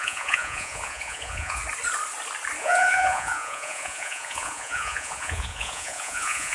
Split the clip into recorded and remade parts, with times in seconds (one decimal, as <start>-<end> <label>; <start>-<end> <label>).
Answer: 0.0-1.6 remade; 1.6-2.6 recorded; 2.6-6.5 remade